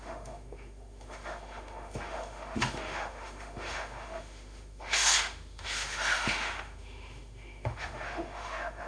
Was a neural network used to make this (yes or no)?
yes